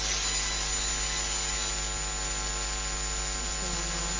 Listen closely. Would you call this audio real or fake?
real